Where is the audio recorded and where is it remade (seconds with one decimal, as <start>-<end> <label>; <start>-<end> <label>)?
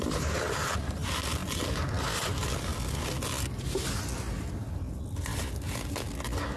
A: 0.0-6.6 recorded